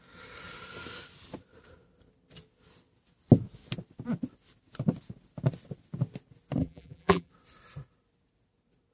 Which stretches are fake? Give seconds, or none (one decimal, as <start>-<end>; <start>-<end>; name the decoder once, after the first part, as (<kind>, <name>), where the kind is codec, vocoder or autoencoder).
6.6-7.3 (vocoder, BigVGAN v2)